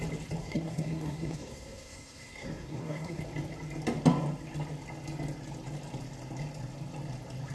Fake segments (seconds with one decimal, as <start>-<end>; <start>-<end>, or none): 0.4-3.2